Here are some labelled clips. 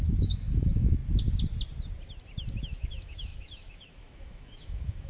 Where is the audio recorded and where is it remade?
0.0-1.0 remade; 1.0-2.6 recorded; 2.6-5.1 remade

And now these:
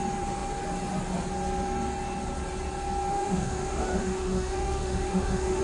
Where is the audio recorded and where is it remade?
0.0-3.1 recorded; 3.1-5.6 remade

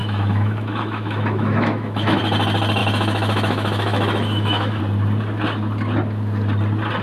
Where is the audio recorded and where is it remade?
0.0-2.2 remade; 2.2-2.8 recorded; 2.8-4.8 remade; 4.8-7.0 recorded

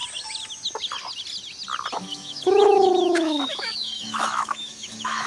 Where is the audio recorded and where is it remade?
0.0-1.9 recorded; 1.9-5.3 remade